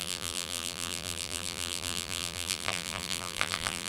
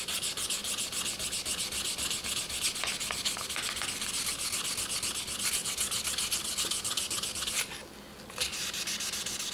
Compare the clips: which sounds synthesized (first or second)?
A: first